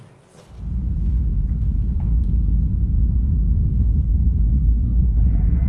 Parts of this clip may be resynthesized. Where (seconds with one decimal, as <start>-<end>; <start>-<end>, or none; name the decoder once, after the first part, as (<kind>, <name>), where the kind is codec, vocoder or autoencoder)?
3.7-5.3 (codec, SNAC)